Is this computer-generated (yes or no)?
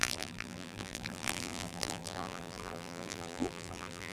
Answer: yes